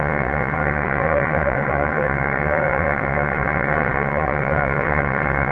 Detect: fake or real fake